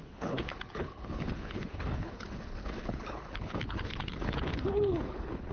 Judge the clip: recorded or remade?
remade